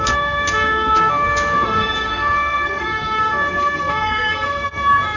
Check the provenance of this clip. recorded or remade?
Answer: remade